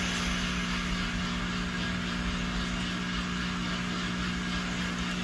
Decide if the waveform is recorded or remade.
recorded